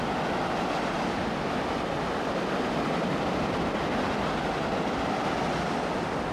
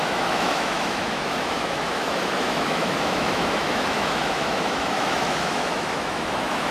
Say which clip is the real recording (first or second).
first